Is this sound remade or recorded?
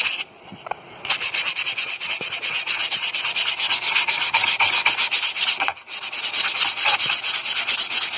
recorded